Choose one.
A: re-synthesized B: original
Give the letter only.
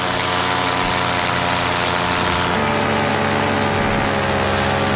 B